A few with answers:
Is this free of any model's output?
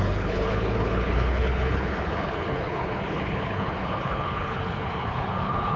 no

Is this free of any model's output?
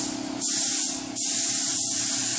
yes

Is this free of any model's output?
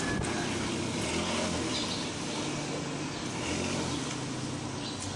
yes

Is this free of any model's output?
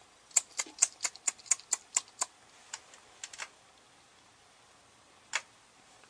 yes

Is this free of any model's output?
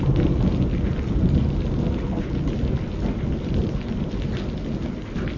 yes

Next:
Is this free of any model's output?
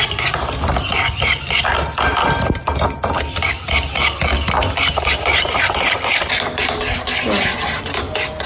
yes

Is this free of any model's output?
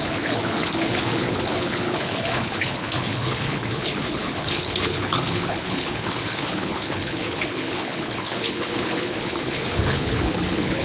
no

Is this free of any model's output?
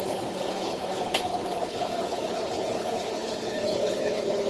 no